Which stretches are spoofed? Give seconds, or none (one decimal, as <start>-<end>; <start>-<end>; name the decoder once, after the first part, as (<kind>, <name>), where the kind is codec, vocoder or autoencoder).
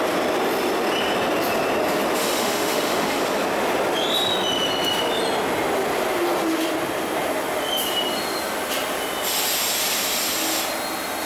2.2-3.2 (autoencoder, DAC-VAE)